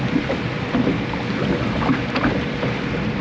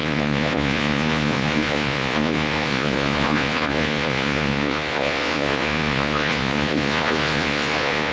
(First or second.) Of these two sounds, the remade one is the second